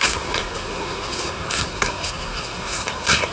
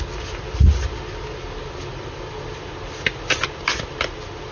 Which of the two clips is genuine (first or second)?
second